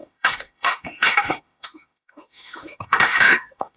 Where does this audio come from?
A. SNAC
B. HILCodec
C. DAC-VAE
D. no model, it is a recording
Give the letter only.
C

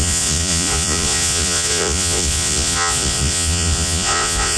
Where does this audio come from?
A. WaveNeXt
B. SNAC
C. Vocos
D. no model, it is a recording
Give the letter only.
C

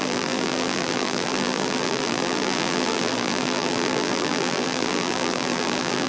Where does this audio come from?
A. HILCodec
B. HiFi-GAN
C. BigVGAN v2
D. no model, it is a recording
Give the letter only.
C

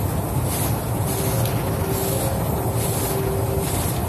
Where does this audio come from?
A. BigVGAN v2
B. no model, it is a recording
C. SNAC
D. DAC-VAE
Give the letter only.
B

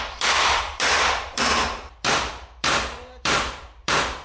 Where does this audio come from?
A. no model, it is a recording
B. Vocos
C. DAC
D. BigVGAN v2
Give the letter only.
D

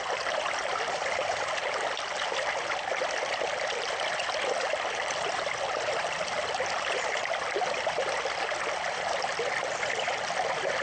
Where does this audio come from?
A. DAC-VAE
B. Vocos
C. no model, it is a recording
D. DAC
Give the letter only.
C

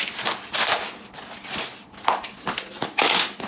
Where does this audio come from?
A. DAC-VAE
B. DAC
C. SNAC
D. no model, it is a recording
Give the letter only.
D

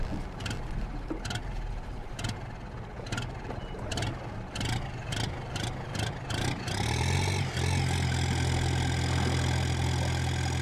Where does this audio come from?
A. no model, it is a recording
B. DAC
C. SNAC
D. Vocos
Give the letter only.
A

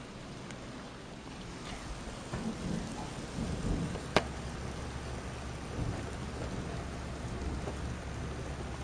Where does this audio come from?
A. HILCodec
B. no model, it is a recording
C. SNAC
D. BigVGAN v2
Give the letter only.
B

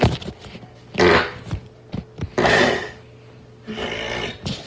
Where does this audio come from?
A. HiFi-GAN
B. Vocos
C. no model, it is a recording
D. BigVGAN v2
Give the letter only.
C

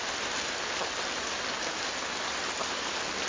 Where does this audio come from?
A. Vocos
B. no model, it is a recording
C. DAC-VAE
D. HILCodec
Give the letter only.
B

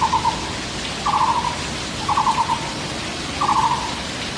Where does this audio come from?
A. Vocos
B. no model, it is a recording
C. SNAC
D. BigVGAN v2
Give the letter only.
B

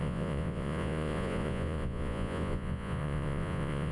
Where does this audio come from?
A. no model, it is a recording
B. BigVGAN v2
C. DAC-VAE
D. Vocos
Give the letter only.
D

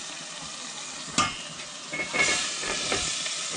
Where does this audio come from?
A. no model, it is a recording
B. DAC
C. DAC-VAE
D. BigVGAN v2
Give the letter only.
A